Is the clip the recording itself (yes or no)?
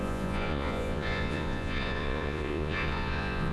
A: no